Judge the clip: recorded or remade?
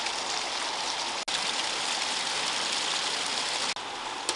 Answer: recorded